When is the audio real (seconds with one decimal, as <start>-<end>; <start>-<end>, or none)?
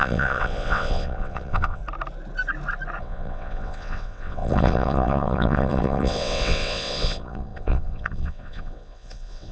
1.8-3.0